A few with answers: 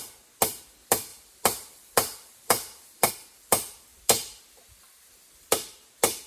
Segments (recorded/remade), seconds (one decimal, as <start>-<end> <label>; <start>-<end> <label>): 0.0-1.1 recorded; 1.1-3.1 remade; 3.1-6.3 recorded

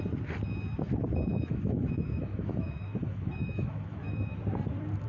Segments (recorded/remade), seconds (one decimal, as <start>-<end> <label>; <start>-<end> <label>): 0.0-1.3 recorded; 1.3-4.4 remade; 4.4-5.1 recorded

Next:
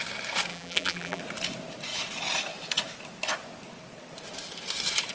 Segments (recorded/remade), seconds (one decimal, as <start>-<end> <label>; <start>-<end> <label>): 0.0-0.5 recorded; 0.5-1.2 remade; 1.2-5.1 recorded

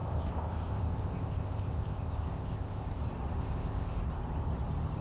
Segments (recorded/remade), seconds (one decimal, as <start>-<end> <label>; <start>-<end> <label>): 0.0-3.0 remade; 3.0-3.4 recorded; 3.4-4.0 remade; 4.0-5.0 recorded

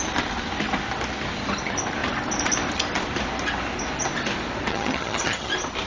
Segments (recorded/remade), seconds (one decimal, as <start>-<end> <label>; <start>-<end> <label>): 0.0-4.7 recorded; 4.7-5.5 remade; 5.5-5.9 recorded

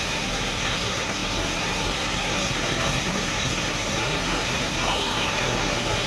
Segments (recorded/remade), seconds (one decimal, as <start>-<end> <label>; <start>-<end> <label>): 0.0-6.1 remade

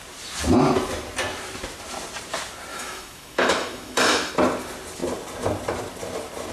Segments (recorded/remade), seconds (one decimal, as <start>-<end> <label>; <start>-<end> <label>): 0.0-2.7 recorded; 2.7-4.3 remade; 4.3-6.5 recorded

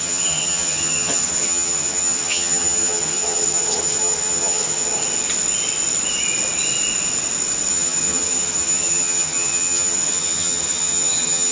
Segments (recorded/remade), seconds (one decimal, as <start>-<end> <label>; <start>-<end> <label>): 0.0-4.9 remade; 4.9-7.7 recorded; 7.7-11.5 remade